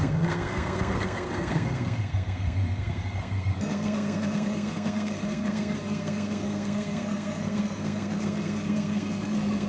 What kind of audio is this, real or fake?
fake